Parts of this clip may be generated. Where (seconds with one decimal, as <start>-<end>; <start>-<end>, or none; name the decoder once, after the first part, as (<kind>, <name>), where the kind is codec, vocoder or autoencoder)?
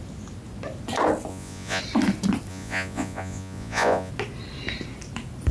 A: 1.3-1.8 (vocoder, Vocos); 2.5-4.1